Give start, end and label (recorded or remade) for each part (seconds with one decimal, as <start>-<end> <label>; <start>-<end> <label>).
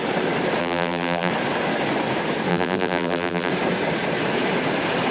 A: 0.0-0.6 recorded; 0.6-1.3 remade; 1.3-2.5 recorded; 2.5-3.5 remade; 3.5-5.1 recorded